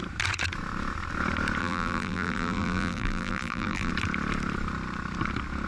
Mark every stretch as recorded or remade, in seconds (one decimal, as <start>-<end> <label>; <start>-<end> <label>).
0.0-1.6 recorded; 1.6-3.9 remade; 3.9-5.7 recorded